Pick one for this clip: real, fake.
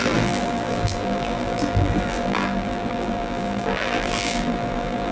fake